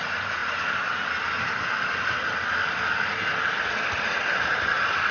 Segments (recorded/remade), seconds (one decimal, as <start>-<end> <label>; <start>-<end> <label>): 0.0-5.1 recorded